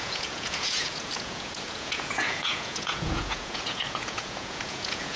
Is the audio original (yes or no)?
no